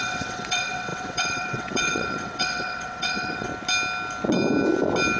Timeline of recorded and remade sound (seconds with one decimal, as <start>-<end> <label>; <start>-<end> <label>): 0.0-3.5 remade; 3.5-5.2 recorded